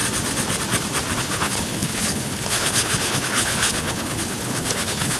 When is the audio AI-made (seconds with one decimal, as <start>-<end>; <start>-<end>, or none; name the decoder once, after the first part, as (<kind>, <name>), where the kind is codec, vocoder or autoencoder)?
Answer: 1.2-5.2 (codec, HILCodec)